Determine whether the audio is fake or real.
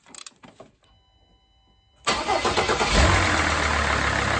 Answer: real